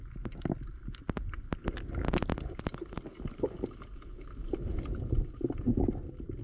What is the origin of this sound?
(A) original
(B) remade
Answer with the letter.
A